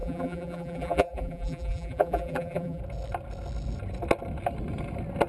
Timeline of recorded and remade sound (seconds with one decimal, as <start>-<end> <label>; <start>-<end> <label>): 0.0-2.8 remade; 2.8-5.3 recorded